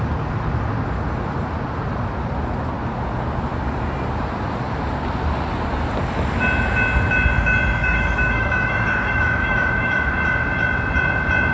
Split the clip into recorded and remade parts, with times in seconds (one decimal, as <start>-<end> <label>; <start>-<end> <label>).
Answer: 0.0-7.8 recorded; 7.8-10.1 remade; 10.1-11.5 recorded